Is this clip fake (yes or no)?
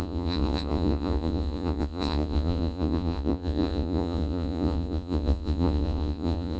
yes